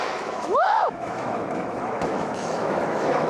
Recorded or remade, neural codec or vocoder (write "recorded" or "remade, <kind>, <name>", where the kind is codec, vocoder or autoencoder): remade, autoencoder, DAC-VAE